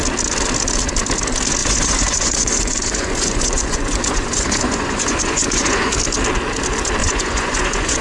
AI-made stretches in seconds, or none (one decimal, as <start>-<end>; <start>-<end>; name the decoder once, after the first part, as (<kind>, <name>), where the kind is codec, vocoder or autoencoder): 1.6-5.9 (vocoder, Vocos); 7.0-8.0